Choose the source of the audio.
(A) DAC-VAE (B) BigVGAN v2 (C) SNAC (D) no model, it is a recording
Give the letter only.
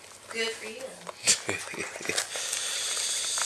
D